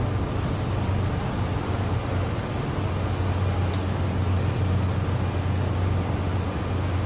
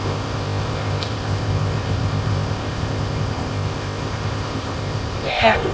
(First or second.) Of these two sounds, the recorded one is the first